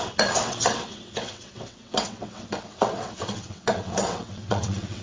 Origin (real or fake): fake